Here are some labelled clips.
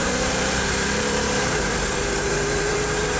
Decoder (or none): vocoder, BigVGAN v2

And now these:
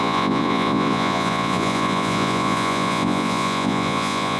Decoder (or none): vocoder, Vocos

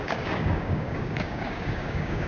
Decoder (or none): codec, DAC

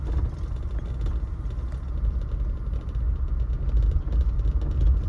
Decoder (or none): none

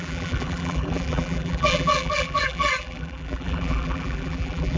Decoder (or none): vocoder, BigVGAN v2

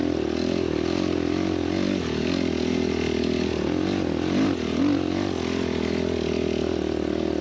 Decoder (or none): none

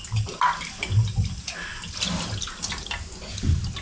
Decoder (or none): none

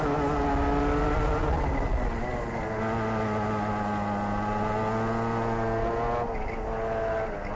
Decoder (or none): none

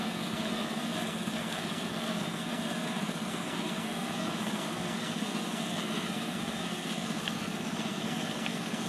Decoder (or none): codec, SNAC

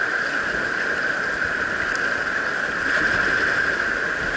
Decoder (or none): none